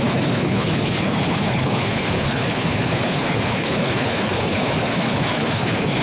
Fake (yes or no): yes